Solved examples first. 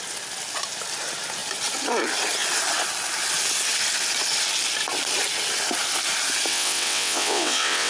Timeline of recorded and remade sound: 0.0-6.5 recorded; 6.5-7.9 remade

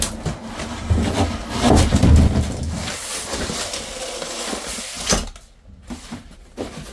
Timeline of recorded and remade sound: 0.0-6.9 recorded

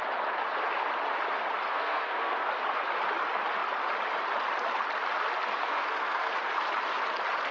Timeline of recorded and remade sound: 0.0-1.7 recorded; 1.7-2.5 remade; 2.5-5.6 recorded; 5.6-6.3 remade; 6.3-7.5 recorded

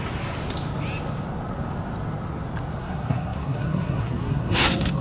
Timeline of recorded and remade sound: 0.0-2.8 recorded; 2.8-5.0 remade

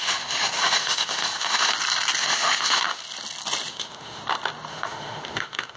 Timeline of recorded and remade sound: 0.0-1.7 remade; 1.7-2.2 recorded; 2.2-3.0 remade; 3.0-3.7 recorded; 3.7-4.2 remade; 4.2-4.7 recorded; 4.7-5.8 remade

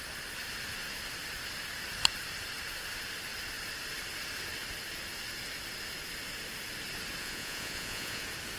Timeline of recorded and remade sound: 0.0-7.2 recorded; 7.2-8.2 remade; 8.2-8.6 recorded

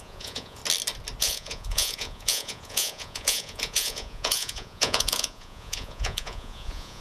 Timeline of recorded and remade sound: 0.0-0.6 remade; 0.6-1.2 recorded; 1.2-7.0 remade

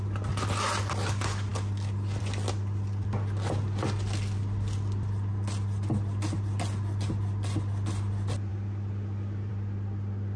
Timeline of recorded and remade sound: 0.0-10.4 recorded